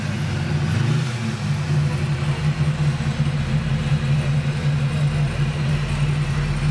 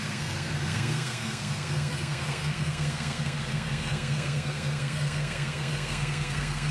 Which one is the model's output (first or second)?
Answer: second